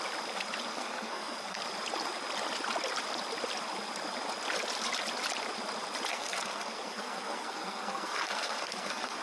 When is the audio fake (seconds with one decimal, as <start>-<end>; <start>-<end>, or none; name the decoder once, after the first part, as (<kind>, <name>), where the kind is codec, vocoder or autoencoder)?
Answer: 0.7-1.6 (codec, SNAC); 6.1-9.2